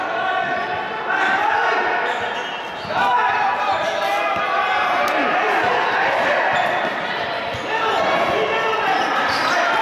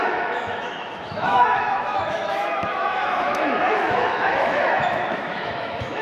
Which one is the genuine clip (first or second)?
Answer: first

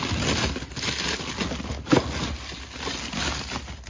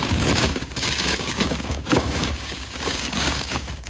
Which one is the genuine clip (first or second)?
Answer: first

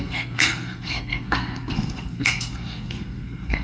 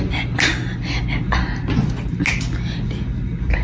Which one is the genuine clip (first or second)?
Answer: second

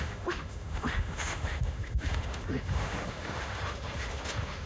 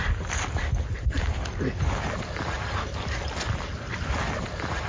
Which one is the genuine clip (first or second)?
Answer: second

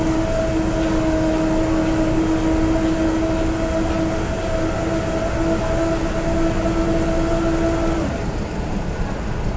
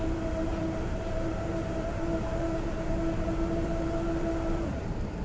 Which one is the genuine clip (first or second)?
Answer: first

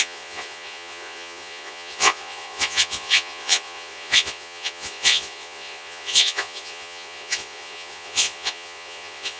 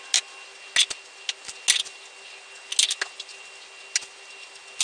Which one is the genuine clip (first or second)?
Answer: second